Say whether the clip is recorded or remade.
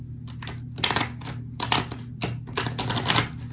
recorded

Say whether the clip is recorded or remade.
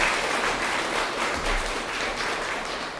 remade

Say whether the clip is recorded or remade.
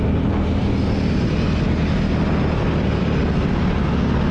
recorded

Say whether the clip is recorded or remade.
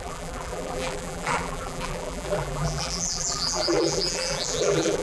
remade